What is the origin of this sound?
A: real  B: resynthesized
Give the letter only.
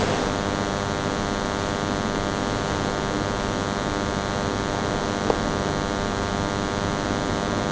A